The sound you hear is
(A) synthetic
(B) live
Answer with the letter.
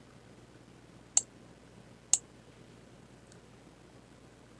B